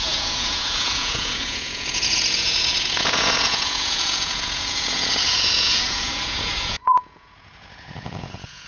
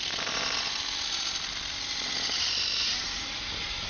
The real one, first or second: second